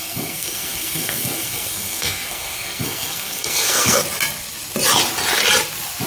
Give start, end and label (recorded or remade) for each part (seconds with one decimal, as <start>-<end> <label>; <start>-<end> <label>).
0.0-4.0 remade; 4.0-6.1 recorded